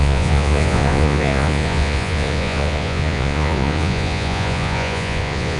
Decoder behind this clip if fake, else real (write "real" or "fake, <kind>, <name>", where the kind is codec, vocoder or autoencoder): fake, vocoder, Vocos